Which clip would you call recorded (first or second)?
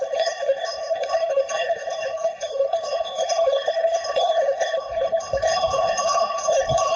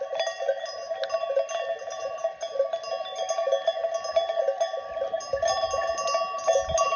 second